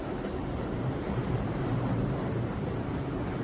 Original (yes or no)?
no